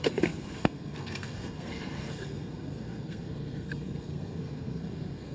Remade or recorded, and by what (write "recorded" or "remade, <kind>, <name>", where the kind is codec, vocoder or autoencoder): remade, codec, SNAC